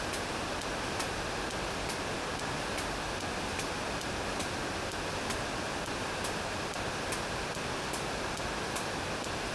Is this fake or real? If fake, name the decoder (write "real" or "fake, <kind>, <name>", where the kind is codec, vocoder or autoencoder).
real